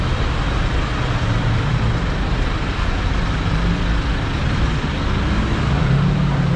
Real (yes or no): yes